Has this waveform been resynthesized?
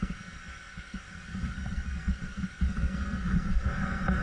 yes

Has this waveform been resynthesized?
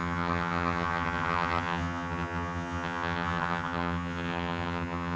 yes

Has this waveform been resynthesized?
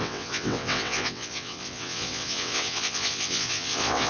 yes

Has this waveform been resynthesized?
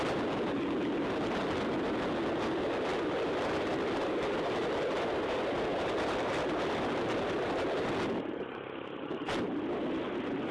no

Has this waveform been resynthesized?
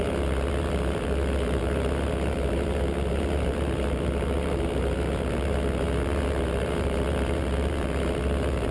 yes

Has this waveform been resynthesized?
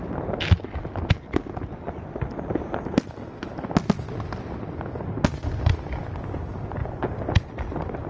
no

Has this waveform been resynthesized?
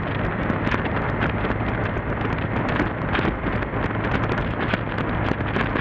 no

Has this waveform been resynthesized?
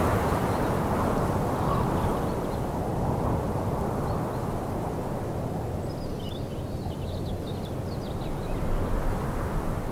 no